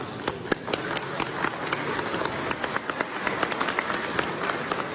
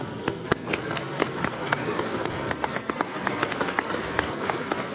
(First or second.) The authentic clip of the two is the first